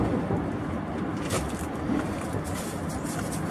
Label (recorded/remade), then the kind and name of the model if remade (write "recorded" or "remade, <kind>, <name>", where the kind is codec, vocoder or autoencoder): recorded